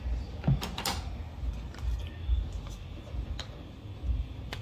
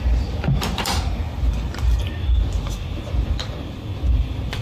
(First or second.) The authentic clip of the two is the first